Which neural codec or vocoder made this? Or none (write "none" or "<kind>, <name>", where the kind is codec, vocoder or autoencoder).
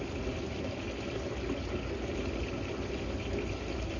none